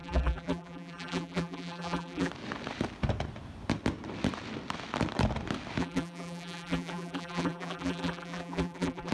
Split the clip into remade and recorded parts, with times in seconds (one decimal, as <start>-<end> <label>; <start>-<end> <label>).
0.0-2.3 remade; 2.3-5.8 recorded; 5.8-9.1 remade